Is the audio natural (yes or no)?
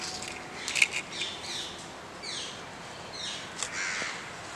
yes